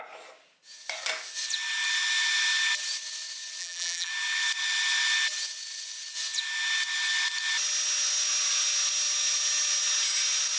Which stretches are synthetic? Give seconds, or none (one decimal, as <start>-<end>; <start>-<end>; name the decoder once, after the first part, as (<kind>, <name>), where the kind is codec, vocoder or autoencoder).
3.6-4.1 (vocoder, BigVGAN v2)